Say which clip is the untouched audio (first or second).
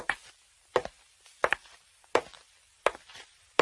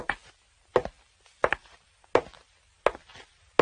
second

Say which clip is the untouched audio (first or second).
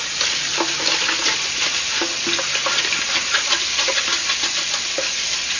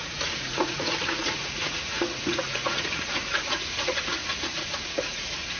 first